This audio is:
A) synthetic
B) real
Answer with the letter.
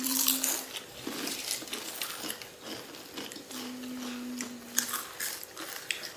B